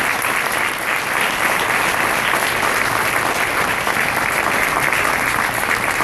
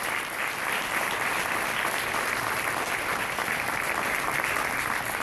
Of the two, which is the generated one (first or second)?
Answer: second